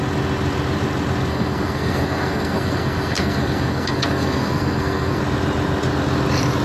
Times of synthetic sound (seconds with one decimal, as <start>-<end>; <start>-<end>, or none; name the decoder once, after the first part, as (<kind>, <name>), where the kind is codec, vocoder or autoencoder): 1.3-5.2 (codec, SNAC)